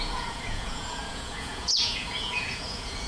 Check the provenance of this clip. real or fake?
fake